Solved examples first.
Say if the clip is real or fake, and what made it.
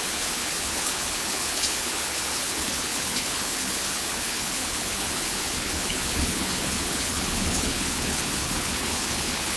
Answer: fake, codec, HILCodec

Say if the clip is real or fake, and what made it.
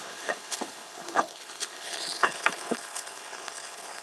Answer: fake, codec, HILCodec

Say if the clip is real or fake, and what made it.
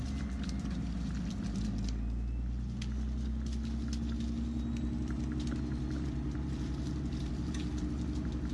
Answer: real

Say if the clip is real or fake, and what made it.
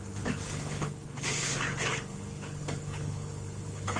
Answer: fake, codec, HILCodec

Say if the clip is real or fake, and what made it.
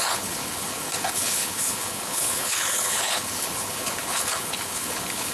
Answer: fake, codec, HILCodec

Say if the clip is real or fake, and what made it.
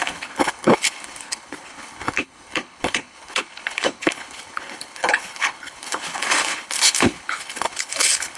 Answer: fake, codec, HILCodec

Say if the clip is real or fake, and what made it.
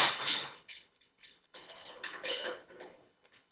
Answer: fake, codec, HILCodec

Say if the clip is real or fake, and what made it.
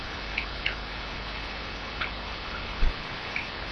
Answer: fake, codec, HILCodec